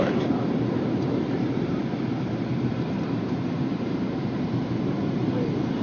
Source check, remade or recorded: remade